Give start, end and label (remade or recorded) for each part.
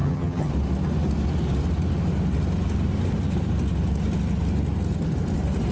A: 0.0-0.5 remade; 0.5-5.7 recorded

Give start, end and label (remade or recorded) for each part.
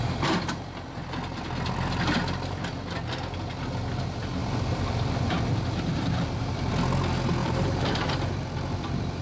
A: 0.0-4.4 recorded; 4.4-6.7 remade; 6.7-7.4 recorded; 7.4-8.4 remade; 8.4-9.2 recorded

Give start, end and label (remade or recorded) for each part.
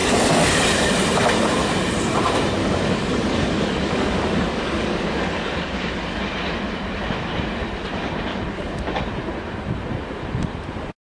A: 0.0-0.6 remade; 0.6-2.6 recorded; 2.6-6.2 remade; 6.2-8.3 recorded; 8.3-9.0 remade; 9.0-11.0 recorded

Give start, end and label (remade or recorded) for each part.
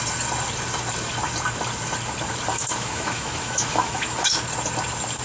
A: 0.0-2.5 recorded; 2.5-4.4 remade; 4.4-5.2 recorded